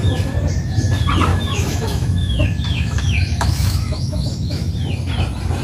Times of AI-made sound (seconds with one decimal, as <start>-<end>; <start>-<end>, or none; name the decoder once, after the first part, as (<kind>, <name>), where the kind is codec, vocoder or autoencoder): 1.3-4.7 (autoencoder, DAC-VAE)